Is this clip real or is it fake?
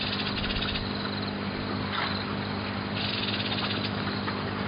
real